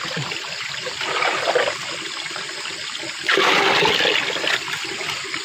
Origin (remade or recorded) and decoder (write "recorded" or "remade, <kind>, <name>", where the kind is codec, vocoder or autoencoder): recorded